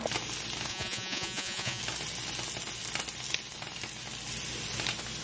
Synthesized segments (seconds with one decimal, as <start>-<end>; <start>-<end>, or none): 0.7-1.8